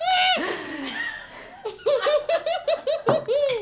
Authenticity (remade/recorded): recorded